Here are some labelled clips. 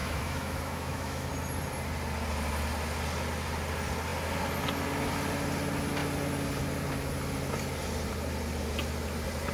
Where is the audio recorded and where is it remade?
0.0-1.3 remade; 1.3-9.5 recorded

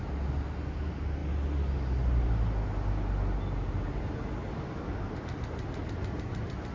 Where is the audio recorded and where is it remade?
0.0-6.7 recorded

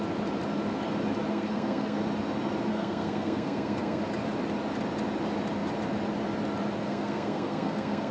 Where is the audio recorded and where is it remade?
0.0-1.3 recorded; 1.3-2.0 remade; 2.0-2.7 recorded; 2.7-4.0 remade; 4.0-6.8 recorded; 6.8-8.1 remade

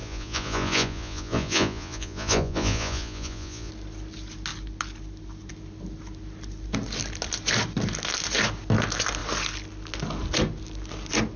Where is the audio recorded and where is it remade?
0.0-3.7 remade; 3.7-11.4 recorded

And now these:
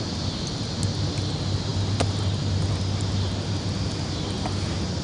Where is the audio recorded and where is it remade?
0.0-5.0 recorded

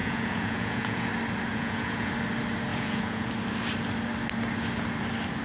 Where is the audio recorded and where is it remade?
0.0-1.1 remade; 1.1-1.5 recorded; 1.5-2.1 remade; 2.1-2.7 recorded; 2.7-3.3 remade; 3.3-5.4 recorded

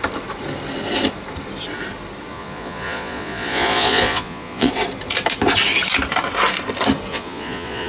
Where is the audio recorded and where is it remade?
0.0-2.3 recorded; 2.3-4.7 remade; 4.7-7.1 recorded; 7.1-7.9 remade

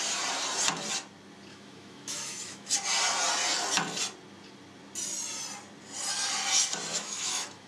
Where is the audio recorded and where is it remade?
0.0-1.5 recorded; 1.5-2.7 remade; 2.7-6.9 recorded; 6.9-7.7 remade